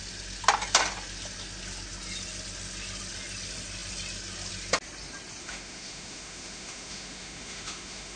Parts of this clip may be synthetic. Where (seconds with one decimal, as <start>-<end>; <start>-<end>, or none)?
5.4-8.2